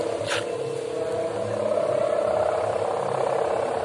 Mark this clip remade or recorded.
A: recorded